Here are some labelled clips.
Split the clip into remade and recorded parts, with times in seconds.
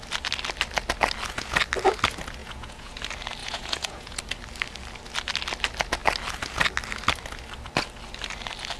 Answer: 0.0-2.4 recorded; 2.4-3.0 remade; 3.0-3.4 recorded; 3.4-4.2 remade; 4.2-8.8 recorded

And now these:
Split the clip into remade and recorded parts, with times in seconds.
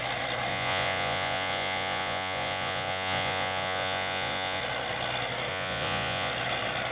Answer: 0.0-0.5 recorded; 0.5-4.6 remade; 4.6-5.5 recorded; 5.5-6.3 remade; 6.3-6.9 recorded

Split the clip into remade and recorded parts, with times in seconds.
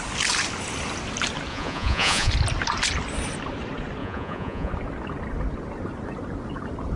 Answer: 0.0-1.5 recorded; 1.5-2.3 remade; 2.3-4.0 recorded; 4.0-4.7 remade; 4.7-7.0 recorded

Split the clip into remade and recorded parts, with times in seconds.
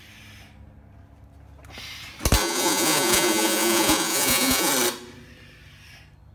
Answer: 0.0-2.4 recorded; 2.4-4.7 remade; 4.7-6.3 recorded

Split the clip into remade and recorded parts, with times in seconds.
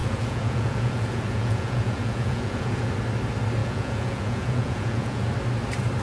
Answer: 0.0-2.9 remade; 2.9-3.6 recorded; 3.6-5.3 remade; 5.3-6.0 recorded